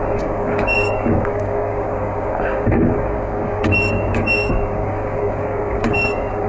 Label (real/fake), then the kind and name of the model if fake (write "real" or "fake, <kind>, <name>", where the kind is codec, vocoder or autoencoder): fake, codec, DAC